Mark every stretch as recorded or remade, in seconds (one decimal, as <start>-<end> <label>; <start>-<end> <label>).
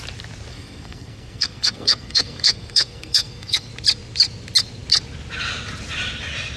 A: 0.0-0.5 recorded; 0.5-3.7 remade; 3.7-6.6 recorded